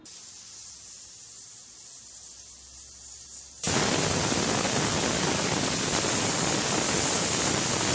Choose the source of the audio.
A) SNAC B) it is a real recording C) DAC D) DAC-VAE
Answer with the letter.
B